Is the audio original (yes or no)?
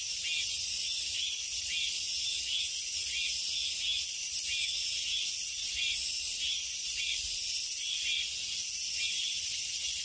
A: yes